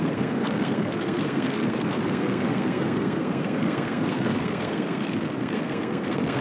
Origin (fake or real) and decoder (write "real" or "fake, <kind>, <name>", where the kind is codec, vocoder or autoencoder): fake, codec, SNAC